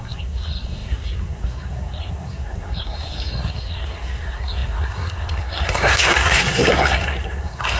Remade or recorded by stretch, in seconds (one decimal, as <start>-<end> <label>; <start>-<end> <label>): 0.0-7.8 remade